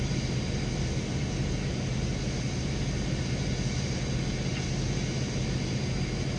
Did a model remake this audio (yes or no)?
no